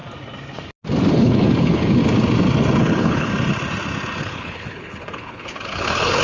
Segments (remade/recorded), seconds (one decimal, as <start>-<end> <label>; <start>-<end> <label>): 0.0-1.1 recorded; 1.1-2.0 remade; 2.0-2.8 recorded; 2.8-3.3 remade; 3.3-4.2 recorded; 4.2-6.2 remade